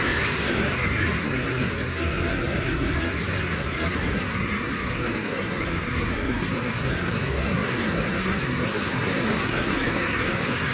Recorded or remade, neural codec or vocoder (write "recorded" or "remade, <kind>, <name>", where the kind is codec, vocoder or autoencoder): remade, codec, SNAC